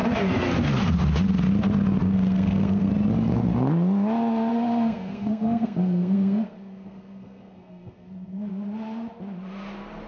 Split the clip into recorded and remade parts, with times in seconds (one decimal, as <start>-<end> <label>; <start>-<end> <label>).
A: 0.0-2.0 recorded; 2.0-2.9 remade; 2.9-4.5 recorded; 4.5-8.5 remade; 8.5-10.1 recorded